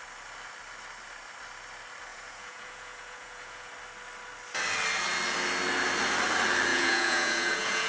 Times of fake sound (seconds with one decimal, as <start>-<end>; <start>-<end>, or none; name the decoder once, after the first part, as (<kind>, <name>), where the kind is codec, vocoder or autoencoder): 2.1-3.7 (vocoder, Vocos); 6.7-7.9

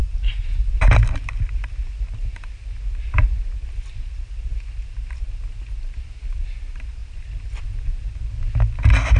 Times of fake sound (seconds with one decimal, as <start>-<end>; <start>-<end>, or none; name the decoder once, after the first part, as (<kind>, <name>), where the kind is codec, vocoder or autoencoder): none

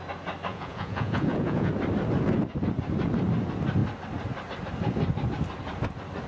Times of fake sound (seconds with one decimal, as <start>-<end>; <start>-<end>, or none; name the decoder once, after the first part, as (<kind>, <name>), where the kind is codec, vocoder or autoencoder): 0.5-1.7 (vocoder, Vocos)

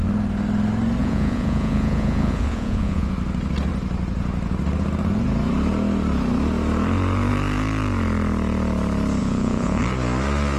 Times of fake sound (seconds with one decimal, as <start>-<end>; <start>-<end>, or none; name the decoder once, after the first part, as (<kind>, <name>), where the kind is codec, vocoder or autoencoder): 1.0-3.1 (vocoder, Vocos); 9.2-9.8

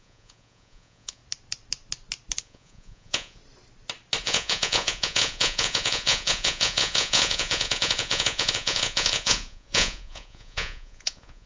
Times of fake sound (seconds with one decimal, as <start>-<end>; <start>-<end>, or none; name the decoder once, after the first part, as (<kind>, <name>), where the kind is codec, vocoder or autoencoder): 0.0-1.2 (vocoder, Vocos); 2.4-3.4; 4.2-11.5

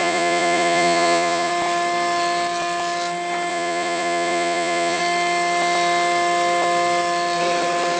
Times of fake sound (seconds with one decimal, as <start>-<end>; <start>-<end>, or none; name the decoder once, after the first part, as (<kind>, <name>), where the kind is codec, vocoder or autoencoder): 0.0-1.5 (vocoder, Vocos); 3.5-5.0

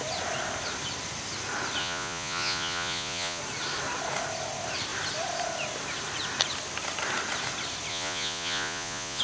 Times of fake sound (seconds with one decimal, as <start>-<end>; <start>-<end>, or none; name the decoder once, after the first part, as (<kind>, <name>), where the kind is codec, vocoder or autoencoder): 1.8-3.4 (vocoder, Vocos); 7.9-9.2

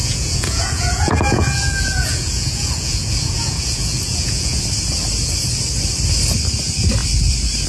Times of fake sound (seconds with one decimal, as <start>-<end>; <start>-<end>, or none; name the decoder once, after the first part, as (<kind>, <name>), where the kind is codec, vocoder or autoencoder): 0.0-4.6 (vocoder, Vocos)